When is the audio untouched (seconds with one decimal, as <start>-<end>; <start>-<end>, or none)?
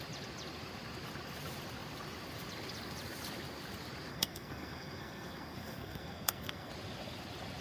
0.0-4.1; 6.7-7.6